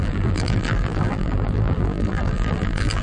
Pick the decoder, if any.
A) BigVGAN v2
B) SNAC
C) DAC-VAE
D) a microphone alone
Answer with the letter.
A